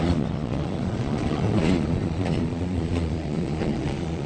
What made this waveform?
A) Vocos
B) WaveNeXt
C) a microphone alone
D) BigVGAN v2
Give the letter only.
A